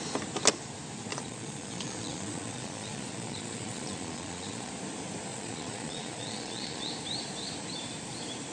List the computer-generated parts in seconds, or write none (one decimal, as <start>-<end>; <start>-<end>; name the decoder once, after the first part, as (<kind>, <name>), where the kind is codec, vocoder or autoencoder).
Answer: 1.1-4.7 (vocoder, Vocos); 5.3-6.9